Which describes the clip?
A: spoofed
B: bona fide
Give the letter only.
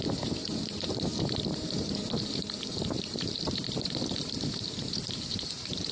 A